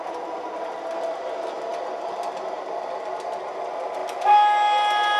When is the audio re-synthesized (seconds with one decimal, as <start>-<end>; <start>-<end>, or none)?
none